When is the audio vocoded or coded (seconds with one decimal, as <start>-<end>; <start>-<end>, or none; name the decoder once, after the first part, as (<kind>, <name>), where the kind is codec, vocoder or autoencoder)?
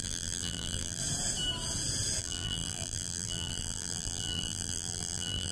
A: 0.0-1.0 (vocoder, BigVGAN v2); 2.2-5.5